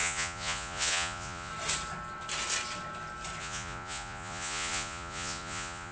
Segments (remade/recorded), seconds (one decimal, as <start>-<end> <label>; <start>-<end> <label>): 0.0-1.5 remade; 1.5-3.4 recorded; 3.4-5.9 remade